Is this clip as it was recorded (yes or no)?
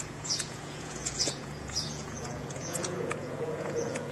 no